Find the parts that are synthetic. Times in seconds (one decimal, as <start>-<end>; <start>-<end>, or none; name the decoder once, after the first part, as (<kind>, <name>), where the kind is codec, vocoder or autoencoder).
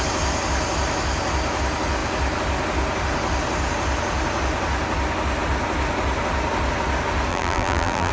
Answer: 7.3-8.1 (vocoder, BigVGAN v2)